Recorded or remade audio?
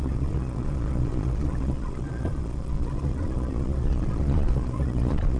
remade